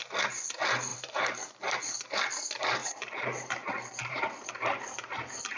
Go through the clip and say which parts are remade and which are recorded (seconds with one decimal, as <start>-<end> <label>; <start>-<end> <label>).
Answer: 0.0-0.9 recorded; 0.9-1.5 remade; 1.5-2.8 recorded; 2.8-5.1 remade; 5.1-5.6 recorded